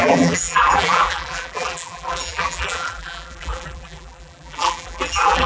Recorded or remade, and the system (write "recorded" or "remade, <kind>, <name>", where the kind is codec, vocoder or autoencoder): remade, vocoder, BigVGAN v2